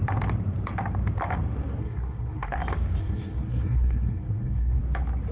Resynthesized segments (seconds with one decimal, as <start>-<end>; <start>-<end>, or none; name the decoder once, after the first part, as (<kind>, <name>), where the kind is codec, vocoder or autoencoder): 1.8-2.6 (codec, SNAC); 3.0-4.8